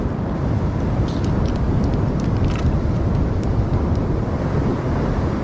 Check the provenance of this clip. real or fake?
real